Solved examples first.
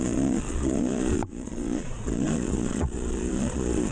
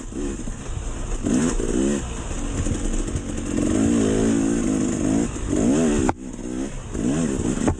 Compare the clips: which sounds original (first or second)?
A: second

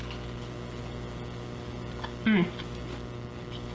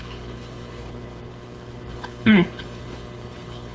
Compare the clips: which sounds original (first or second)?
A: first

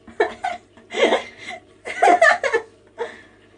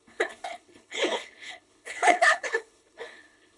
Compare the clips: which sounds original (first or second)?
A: first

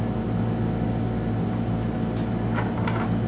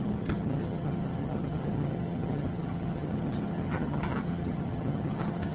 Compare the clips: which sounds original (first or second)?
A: first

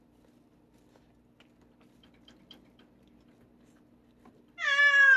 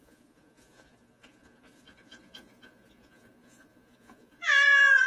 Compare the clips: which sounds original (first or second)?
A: first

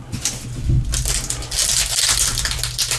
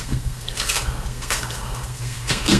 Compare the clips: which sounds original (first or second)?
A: first